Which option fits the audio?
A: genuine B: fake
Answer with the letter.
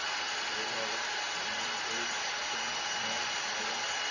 A